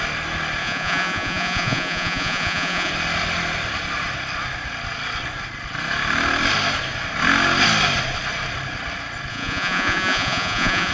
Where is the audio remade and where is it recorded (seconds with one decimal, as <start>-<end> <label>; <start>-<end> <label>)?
0.0-0.6 recorded; 0.6-2.9 remade; 2.9-9.3 recorded; 9.3-10.9 remade